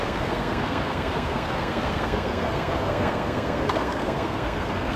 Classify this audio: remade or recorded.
remade